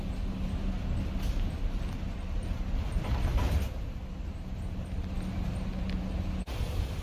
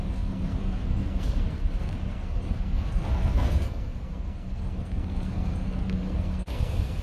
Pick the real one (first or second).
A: first